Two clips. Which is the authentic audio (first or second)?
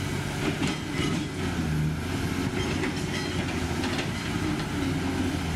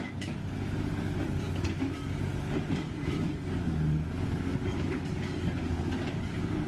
first